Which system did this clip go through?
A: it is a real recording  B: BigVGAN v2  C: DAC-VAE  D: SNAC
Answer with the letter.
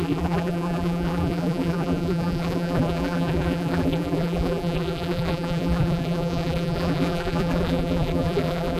B